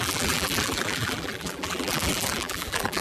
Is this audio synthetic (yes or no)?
yes